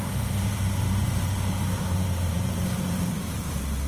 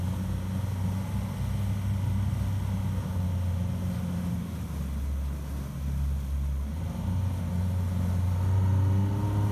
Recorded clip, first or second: second